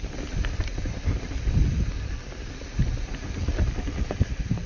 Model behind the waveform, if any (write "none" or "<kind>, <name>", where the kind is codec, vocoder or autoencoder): none